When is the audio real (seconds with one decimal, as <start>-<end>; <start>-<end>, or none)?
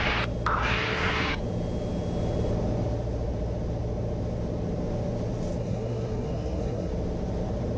0.0-0.6; 1.4-5.6; 6.9-7.8